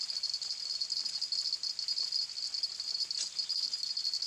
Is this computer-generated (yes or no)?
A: no